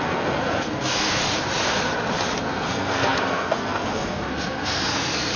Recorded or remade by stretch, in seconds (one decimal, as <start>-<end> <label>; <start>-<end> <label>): 0.0-1.2 remade; 1.2-2.4 recorded; 2.4-5.4 remade